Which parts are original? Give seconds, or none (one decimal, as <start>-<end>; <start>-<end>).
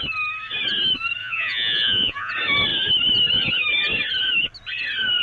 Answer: 0.0-1.2; 2.3-5.2